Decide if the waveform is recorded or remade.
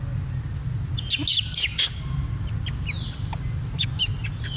recorded